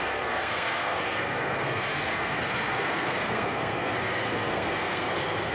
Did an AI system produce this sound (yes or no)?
yes